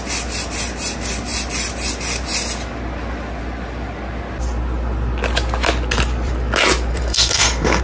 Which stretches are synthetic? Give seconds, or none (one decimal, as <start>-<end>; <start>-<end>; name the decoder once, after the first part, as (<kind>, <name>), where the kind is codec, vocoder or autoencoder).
6.9-7.8 (codec, SNAC)